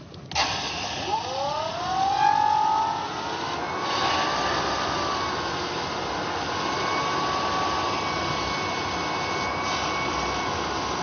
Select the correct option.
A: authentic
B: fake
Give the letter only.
A